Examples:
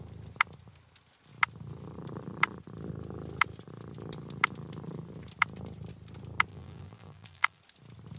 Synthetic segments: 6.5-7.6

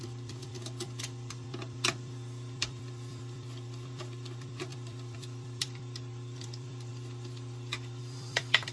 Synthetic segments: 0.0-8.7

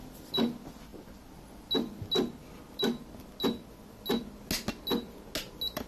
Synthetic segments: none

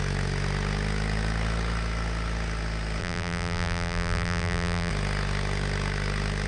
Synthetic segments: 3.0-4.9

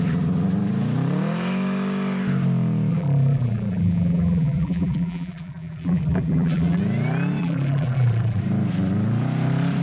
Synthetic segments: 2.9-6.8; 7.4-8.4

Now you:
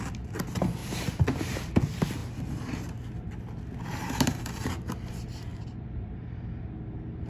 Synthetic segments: 0.8-1.4; 3.9-5.1; 5.5-6.1

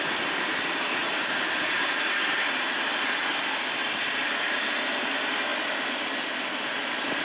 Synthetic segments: 0.0-3.8; 4.7-5.5; 6.2-7.2

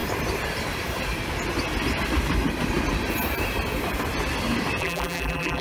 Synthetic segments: 4.8-5.6